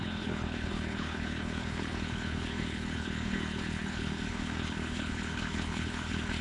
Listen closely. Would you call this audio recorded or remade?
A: remade